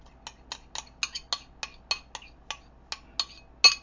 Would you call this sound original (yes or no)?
yes